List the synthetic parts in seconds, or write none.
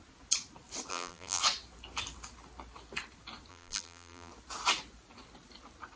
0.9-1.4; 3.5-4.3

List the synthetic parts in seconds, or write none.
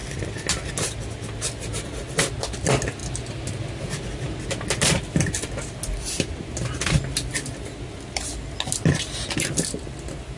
none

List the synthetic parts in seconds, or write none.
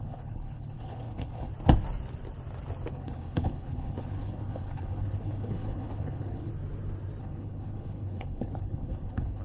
0.0-1.5; 2.9-6.5; 7.2-9.4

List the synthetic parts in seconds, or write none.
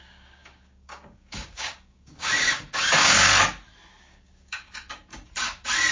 0.0-3.3; 3.9-5.1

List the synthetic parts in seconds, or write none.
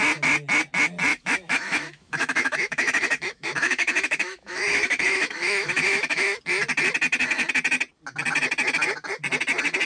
1.1-6.4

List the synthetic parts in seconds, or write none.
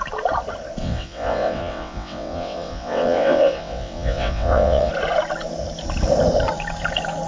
0.8-4.9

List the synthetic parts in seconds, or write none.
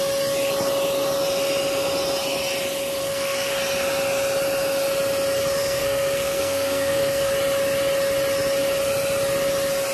3.0-3.5; 5.6-7.3